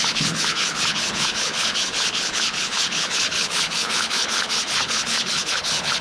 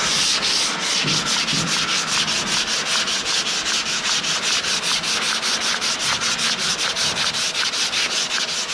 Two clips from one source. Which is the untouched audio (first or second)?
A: second